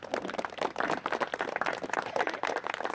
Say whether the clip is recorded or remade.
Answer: remade